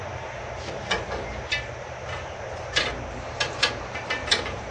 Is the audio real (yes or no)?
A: no